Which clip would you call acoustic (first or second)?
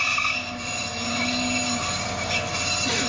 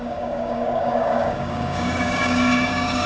first